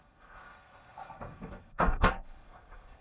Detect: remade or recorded remade